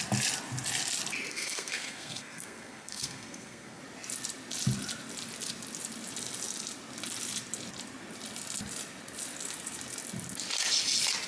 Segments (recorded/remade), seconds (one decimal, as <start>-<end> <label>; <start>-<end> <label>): 0.0-1.3 recorded; 1.3-3.8 remade; 3.8-11.3 recorded